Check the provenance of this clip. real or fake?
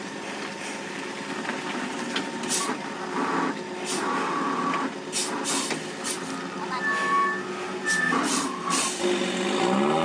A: real